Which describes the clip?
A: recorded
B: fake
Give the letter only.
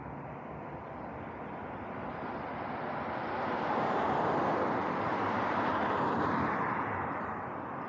A